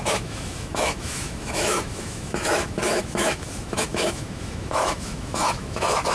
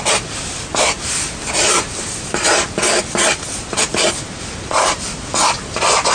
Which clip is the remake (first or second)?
first